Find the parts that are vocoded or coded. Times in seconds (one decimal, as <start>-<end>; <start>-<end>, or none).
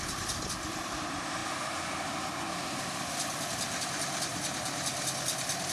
0.0-1.4; 2.5-5.7